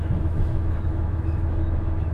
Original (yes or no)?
no